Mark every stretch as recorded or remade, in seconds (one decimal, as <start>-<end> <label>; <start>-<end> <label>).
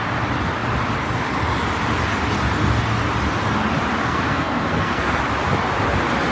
0.0-4.0 recorded; 4.0-5.2 remade; 5.2-6.3 recorded